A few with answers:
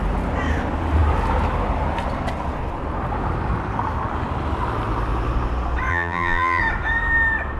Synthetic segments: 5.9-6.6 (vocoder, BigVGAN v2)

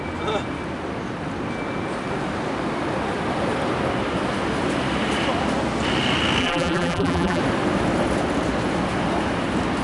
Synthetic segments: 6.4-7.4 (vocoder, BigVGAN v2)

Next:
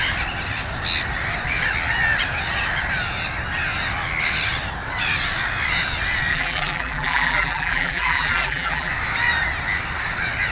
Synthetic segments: 6.3-8.9 (vocoder, BigVGAN v2)

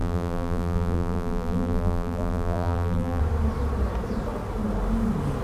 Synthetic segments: 0.0-3.2 (vocoder, BigVGAN v2)

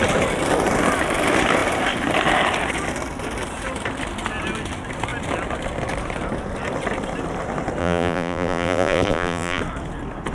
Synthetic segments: 7.8-9.6 (vocoder, BigVGAN v2)

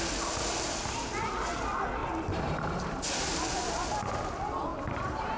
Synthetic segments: 2.0-3.1 (vocoder, BigVGAN v2); 4.7-5.4

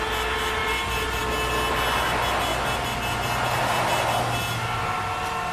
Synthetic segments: 0.6-1.2 (vocoder, BigVGAN v2)

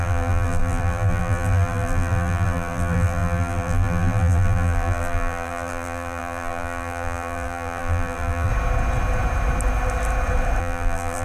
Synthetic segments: 0.0-8.5 (vocoder, BigVGAN v2); 10.6-11.2